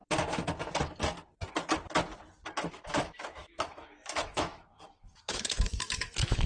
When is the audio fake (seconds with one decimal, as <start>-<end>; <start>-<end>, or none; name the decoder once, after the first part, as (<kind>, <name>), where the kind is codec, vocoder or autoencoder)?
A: 2.7-6.5 (autoencoder, DAC-VAE)

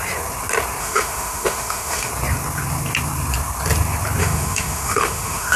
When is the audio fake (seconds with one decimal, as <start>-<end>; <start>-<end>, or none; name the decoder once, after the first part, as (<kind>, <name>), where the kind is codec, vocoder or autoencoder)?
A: 0.8-2.1 (autoencoder, DAC-VAE); 4.2-5.6

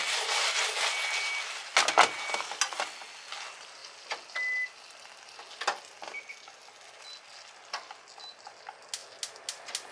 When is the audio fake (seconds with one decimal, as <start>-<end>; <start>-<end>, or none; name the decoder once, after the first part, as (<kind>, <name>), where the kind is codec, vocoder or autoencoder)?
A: none

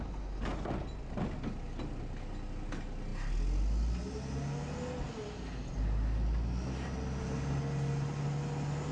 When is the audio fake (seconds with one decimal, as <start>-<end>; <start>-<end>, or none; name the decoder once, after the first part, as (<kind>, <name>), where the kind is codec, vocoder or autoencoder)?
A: none

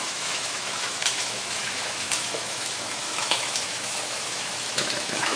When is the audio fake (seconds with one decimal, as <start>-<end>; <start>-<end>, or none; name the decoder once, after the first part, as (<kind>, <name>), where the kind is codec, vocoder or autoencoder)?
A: 0.0-5.4 (autoencoder, DAC-VAE)

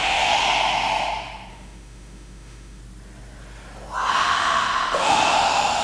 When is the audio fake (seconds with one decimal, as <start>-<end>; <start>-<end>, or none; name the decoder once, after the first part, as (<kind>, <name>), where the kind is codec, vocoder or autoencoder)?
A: 0.0-0.4 (autoencoder, DAC-VAE); 1.5-2.8; 4.1-5.8

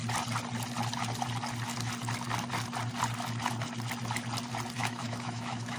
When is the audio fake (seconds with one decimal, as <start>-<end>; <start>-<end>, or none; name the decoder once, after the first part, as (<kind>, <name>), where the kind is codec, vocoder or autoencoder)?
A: 4.8-5.8 (autoencoder, DAC-VAE)